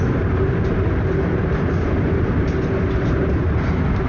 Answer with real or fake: fake